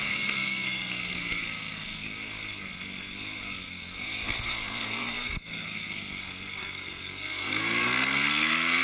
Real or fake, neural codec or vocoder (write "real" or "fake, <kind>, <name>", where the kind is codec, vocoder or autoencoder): fake, codec, SNAC